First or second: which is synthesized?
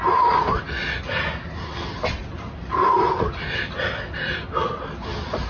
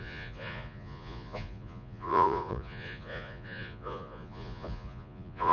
second